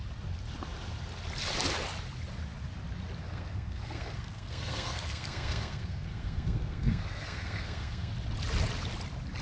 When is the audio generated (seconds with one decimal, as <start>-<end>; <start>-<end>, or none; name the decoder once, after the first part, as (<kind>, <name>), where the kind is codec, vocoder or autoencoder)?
3.2-8.1 (codec, SNAC)